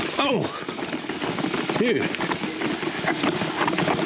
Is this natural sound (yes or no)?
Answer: yes